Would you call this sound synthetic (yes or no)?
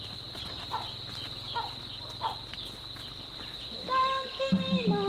no